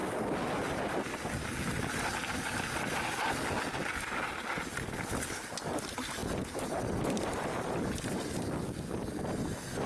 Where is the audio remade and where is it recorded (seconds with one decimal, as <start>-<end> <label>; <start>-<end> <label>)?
0.0-9.9 recorded